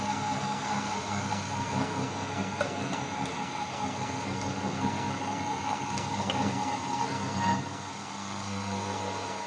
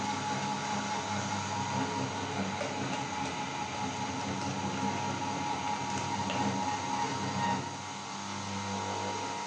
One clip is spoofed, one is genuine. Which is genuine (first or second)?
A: second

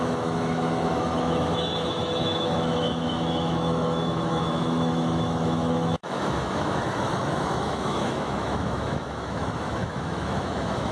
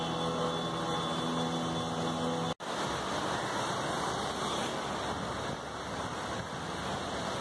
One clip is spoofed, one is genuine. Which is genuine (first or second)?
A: second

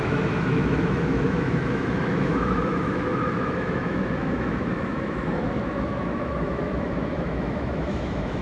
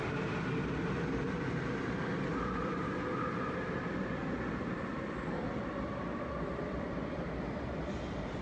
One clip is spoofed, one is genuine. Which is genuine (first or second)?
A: second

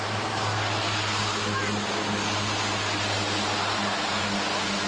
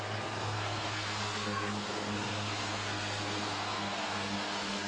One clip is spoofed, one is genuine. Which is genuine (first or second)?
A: first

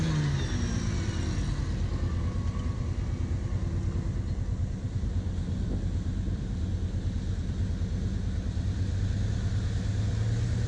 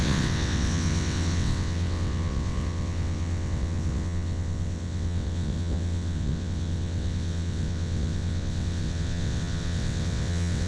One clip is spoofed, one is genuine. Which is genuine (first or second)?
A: first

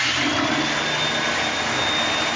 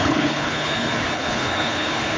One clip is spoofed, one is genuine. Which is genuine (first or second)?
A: first